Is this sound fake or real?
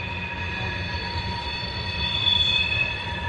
real